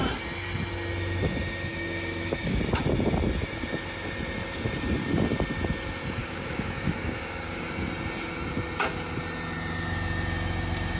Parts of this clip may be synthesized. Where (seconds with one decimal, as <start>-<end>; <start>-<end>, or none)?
1.7-2.6; 6.2-7.7